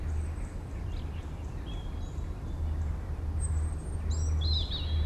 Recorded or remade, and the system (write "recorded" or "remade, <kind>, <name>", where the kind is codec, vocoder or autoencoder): recorded